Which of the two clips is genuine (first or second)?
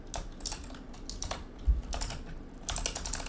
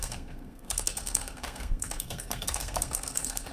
first